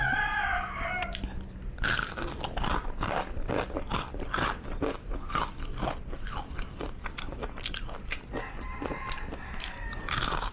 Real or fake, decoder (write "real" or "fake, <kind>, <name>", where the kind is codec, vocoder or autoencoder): real